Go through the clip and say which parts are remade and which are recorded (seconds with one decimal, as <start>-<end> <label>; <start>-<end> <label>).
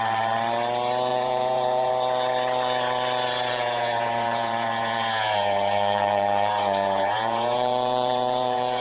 0.0-1.1 recorded; 1.1-1.9 remade; 1.9-3.5 recorded; 3.5-8.8 remade